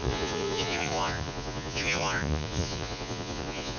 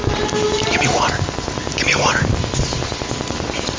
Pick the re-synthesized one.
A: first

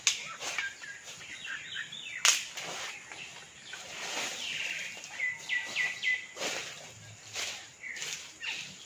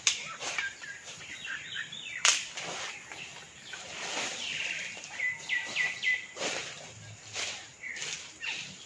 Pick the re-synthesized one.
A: second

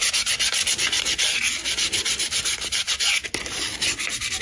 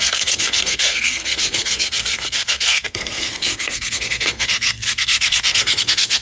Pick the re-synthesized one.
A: second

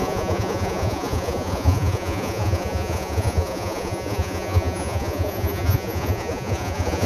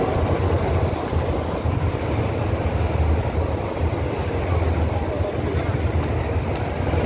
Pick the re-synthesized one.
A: first